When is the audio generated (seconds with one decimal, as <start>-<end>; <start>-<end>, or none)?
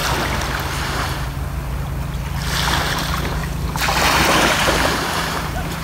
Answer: 2.8-3.4; 4.0-5.8